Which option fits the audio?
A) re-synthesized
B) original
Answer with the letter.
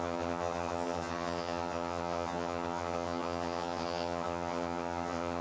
A